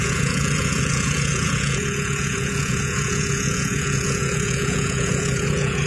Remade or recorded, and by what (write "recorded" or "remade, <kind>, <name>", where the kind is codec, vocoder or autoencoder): remade, vocoder, Vocos